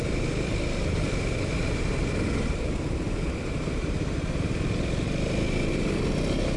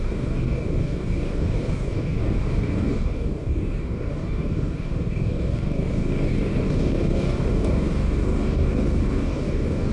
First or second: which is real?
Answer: first